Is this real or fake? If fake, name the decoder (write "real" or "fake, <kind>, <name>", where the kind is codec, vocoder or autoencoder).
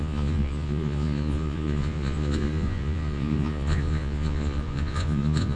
fake, vocoder, Vocos